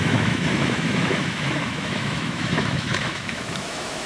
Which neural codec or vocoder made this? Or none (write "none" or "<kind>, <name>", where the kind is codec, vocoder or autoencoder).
autoencoder, DAC-VAE